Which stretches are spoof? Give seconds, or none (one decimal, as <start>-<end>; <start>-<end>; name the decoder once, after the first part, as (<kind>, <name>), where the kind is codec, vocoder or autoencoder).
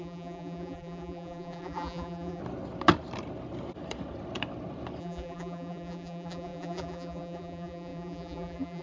0.0-2.4 (vocoder, BigVGAN v2); 5.0-8.8